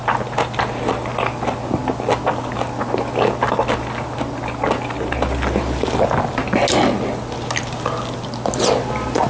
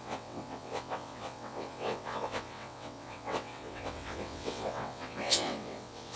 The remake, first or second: second